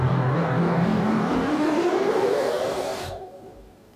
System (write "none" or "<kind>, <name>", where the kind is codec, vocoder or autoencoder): codec, DAC